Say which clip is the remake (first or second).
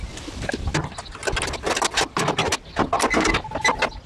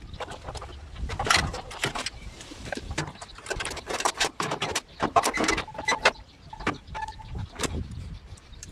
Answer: second